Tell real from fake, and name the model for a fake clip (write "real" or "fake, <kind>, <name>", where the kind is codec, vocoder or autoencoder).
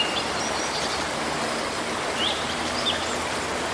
real